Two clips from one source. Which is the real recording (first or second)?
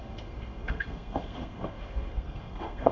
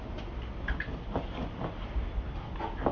second